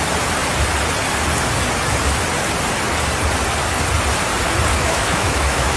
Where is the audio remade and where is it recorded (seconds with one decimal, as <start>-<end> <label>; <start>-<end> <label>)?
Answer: 0.0-4.7 recorded; 4.7-5.8 remade